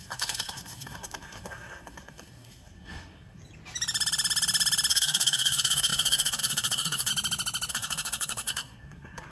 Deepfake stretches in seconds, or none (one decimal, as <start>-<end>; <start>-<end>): 0.0-3.4; 4.9-7.1; 7.7-9.3